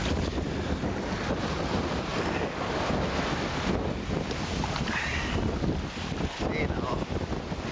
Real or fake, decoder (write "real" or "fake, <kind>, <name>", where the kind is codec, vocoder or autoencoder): real